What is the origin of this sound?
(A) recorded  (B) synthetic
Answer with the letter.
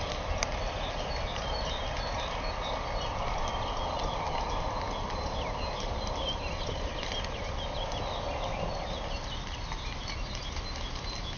A